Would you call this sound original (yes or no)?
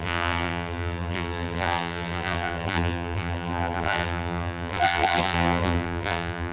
no